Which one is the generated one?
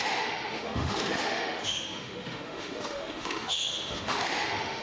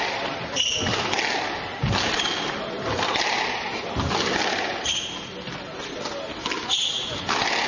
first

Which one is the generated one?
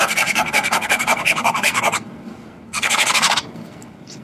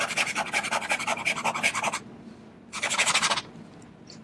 first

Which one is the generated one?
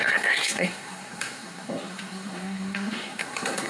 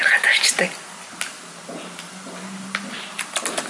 first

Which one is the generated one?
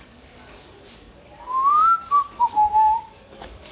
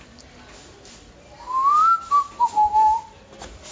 first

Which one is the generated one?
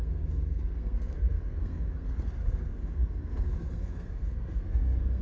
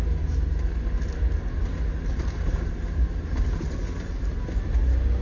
first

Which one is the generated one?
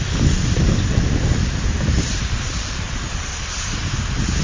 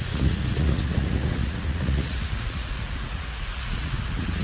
second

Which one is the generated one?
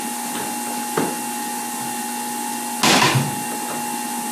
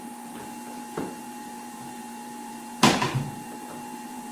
second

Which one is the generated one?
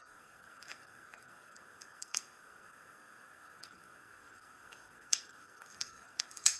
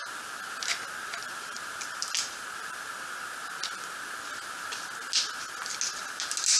first